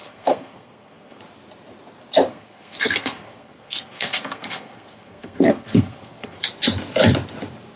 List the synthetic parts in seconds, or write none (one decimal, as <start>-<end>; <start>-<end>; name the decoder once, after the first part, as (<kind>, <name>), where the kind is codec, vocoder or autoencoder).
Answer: 0.0-1.2 (codec, SNAC); 2.3-6.4